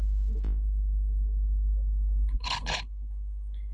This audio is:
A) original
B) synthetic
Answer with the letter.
B